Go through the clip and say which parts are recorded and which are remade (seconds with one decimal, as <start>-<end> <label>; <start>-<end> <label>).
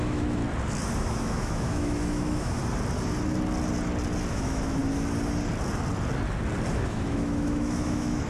0.0-0.4 remade; 0.4-1.0 recorded; 1.0-2.6 remade; 2.6-4.3 recorded; 4.3-4.8 remade; 4.8-6.7 recorded; 6.7-8.3 remade